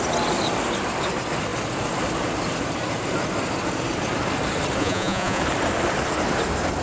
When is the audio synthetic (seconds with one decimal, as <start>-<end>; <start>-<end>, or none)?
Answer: 4.8-5.4